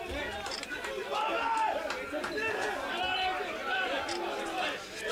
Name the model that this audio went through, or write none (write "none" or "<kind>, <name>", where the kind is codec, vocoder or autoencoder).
none